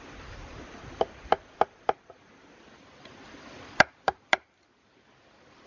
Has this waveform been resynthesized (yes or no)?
yes